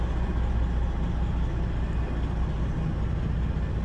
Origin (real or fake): real